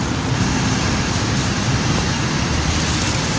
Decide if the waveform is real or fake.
fake